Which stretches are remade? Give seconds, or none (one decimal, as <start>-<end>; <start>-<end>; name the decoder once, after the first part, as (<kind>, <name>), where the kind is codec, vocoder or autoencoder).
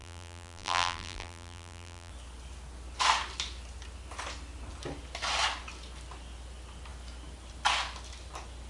0.0-2.1 (vocoder, BigVGAN v2)